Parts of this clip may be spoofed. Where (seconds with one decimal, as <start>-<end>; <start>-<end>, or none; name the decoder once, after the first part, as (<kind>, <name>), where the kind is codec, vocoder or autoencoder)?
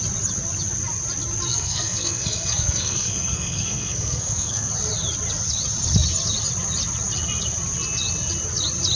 1.5-4.7 (codec, SNAC)